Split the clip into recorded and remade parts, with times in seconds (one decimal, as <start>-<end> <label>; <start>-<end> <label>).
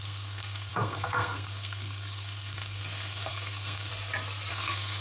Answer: 0.0-3.9 remade; 3.9-4.5 recorded; 4.5-5.0 remade